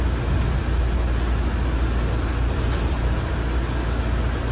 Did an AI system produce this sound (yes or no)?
no